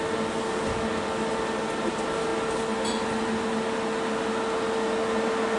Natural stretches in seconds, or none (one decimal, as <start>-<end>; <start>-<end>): 0.0-5.6